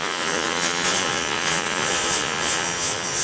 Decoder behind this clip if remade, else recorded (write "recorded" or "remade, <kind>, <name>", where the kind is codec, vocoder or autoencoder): remade, vocoder, Vocos